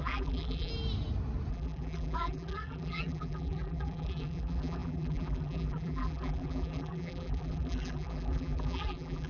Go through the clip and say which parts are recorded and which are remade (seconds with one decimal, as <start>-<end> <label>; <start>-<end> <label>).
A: 0.0-0.7 remade; 0.7-1.5 recorded; 1.5-9.3 remade

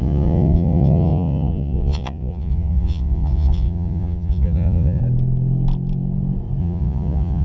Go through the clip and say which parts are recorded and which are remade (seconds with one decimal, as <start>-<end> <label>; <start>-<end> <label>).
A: 0.0-5.0 remade; 5.0-6.6 recorded; 6.6-7.4 remade

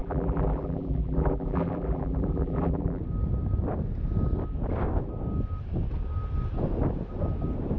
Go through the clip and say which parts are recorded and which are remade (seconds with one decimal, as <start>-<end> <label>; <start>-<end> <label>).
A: 0.0-3.0 remade; 3.0-7.8 recorded

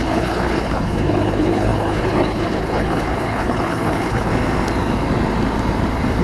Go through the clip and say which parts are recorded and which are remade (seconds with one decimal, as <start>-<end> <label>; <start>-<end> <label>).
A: 0.0-4.3 remade; 4.3-6.2 recorded

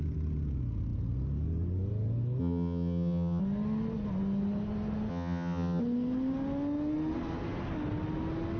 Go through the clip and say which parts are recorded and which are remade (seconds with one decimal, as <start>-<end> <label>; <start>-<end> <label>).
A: 0.0-2.4 recorded; 2.4-3.4 remade; 3.4-5.1 recorded; 5.1-5.8 remade; 5.8-8.6 recorded

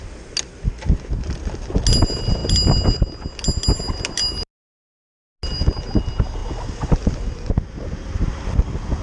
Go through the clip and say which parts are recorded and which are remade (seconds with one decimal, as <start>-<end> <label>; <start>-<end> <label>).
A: 0.0-9.0 recorded